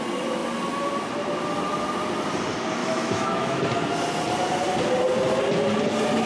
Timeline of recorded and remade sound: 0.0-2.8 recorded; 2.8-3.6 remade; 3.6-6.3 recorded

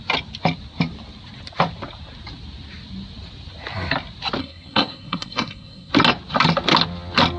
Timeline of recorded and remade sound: 0.0-4.4 recorded; 4.4-5.9 remade; 5.9-7.4 recorded

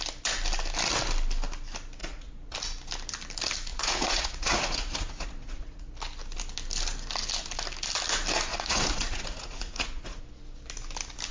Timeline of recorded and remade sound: 0.0-2.0 recorded; 2.0-2.5 remade; 2.5-3.7 recorded; 3.7-5.9 remade; 5.9-8.5 recorded; 8.5-10.2 remade; 10.2-11.3 recorded

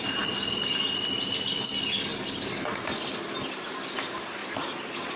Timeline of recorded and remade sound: 0.0-4.4 recorded; 4.4-5.2 remade

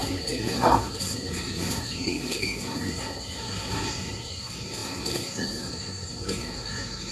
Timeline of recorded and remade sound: 0.0-7.1 remade